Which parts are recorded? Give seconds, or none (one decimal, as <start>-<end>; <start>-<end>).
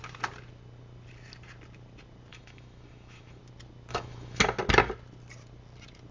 0.0-2.3; 3.4-3.9; 4.4-6.1